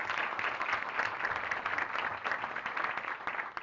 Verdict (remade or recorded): recorded